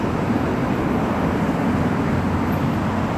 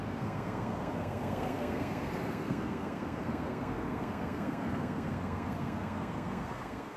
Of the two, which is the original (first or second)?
first